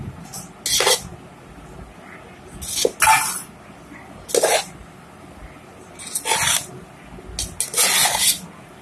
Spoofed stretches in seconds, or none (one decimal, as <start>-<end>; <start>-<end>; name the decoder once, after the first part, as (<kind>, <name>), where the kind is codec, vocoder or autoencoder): none